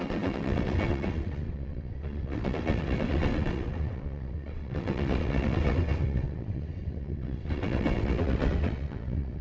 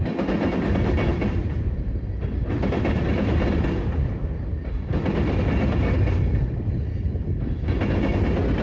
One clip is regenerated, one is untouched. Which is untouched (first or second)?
second